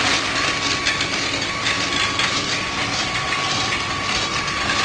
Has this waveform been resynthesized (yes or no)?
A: no